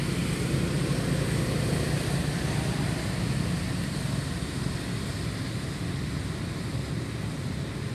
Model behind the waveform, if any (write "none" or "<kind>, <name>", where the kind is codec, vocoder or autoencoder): vocoder, BigVGAN v2